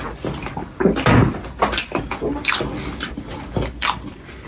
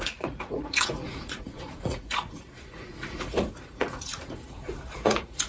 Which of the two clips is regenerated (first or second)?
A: second